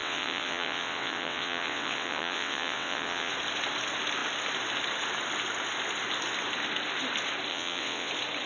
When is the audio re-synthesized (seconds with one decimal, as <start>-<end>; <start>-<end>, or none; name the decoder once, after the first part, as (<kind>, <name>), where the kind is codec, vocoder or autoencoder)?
0.0-3.3 (vocoder, WaveNeXt); 7.5-8.1